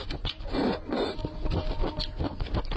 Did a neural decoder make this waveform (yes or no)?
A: no